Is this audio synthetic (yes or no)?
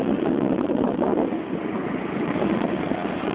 yes